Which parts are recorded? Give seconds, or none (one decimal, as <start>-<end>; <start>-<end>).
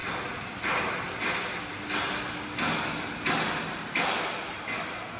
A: 0.0-5.2